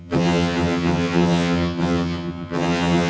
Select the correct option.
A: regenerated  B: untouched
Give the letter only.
A